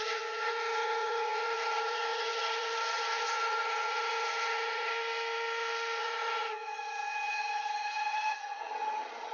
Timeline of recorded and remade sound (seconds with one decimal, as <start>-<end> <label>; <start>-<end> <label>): 0.0-4.9 remade; 4.9-6.0 recorded; 6.0-9.3 remade